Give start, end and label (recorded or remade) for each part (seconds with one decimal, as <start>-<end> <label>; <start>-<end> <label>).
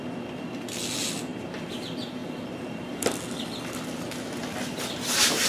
0.0-5.5 recorded